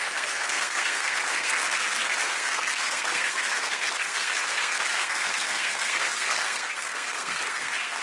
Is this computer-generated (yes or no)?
yes